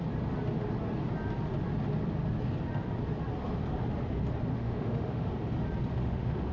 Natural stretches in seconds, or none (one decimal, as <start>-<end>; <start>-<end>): 0.0-4.5; 5.3-6.0